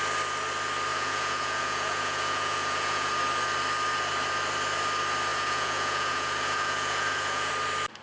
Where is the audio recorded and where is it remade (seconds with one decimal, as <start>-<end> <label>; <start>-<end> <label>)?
0.0-0.9 recorded; 0.9-3.1 remade; 3.1-5.3 recorded; 5.3-7.5 remade; 7.5-8.0 recorded